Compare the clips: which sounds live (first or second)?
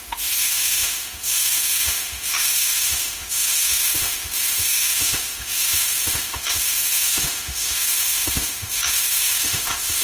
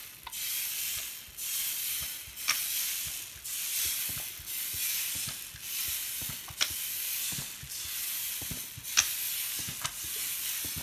second